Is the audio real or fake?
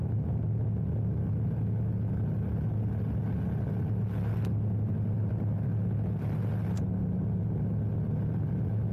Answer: real